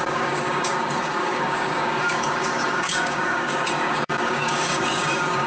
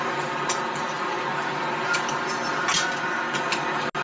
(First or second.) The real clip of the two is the second